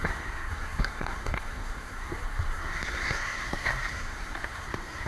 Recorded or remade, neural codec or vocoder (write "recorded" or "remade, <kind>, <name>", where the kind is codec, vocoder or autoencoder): remade, codec, SNAC